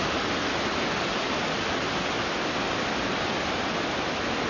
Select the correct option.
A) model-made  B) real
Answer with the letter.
B